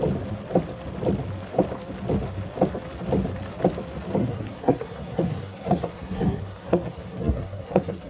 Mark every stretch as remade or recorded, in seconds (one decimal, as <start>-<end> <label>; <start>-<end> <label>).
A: 0.0-4.2 recorded; 4.2-8.1 remade